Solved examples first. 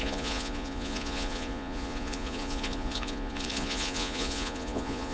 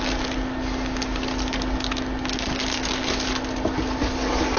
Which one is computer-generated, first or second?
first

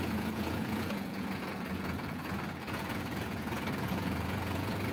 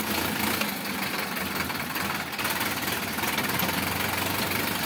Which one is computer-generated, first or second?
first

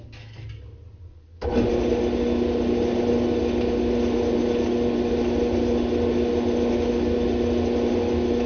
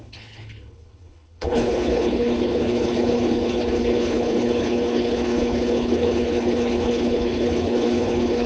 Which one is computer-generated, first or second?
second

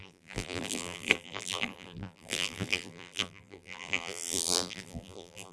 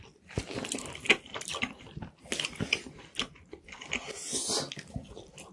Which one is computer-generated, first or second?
first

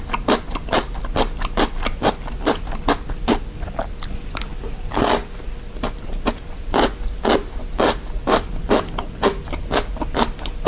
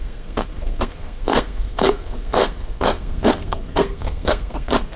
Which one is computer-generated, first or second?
second